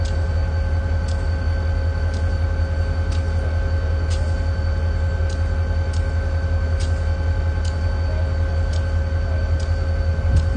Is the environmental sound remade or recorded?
recorded